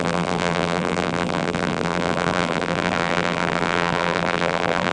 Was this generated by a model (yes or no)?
yes